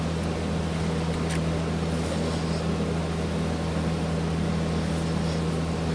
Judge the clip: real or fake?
real